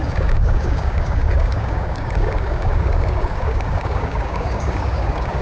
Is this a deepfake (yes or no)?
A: yes